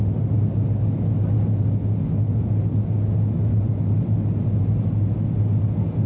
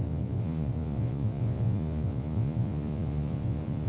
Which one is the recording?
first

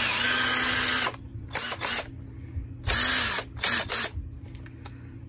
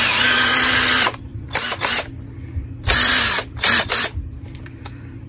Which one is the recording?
first